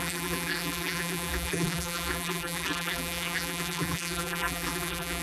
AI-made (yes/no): yes